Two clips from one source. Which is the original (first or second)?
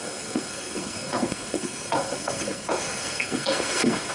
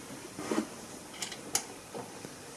second